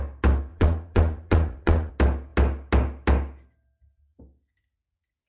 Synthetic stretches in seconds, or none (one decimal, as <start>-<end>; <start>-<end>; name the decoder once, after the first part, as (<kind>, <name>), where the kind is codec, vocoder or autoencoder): 0.5-1.9 (vocoder, Vocos)